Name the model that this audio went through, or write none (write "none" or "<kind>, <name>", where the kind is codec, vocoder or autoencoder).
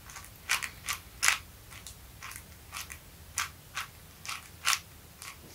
none